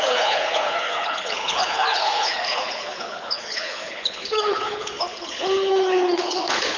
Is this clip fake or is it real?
fake